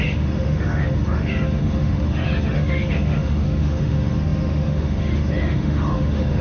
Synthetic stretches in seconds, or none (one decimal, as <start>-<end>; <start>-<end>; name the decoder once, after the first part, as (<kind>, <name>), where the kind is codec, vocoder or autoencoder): 0.0-6.4 (autoencoder, DAC-VAE)